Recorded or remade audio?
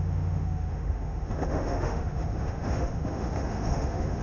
remade